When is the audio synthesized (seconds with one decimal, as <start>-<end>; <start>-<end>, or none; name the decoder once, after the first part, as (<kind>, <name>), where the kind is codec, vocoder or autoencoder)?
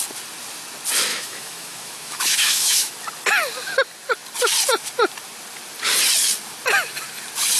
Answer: 1.1-2.9 (autoencoder, DAC-VAE)